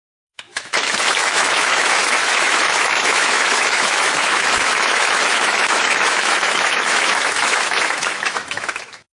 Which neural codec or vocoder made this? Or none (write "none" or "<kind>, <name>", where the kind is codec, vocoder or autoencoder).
autoencoder, DAC-VAE